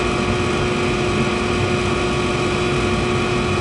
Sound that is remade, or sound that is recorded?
recorded